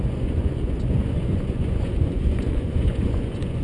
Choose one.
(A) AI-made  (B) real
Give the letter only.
A